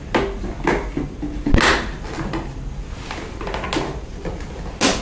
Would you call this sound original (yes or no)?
yes